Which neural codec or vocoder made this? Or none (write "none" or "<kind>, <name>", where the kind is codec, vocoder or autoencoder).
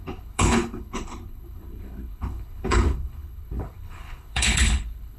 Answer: codec, HILCodec